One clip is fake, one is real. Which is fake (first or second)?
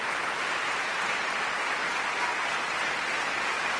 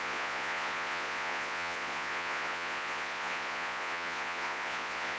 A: second